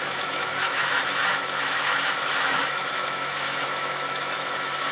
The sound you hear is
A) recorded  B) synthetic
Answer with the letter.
B